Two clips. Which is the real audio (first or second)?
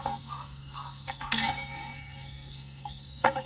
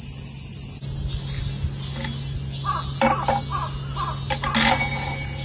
second